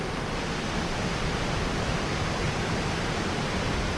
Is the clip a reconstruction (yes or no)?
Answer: no